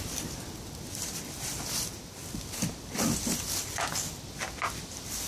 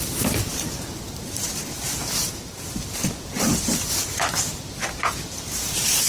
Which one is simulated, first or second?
second